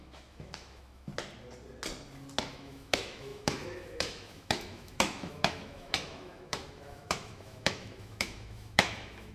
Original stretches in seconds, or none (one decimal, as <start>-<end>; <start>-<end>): 1.1-2.5